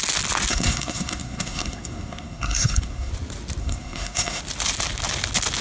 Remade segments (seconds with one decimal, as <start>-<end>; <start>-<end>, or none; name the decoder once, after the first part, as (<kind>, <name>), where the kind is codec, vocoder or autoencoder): 0.5-3.1 (codec, SNAC); 3.6-4.4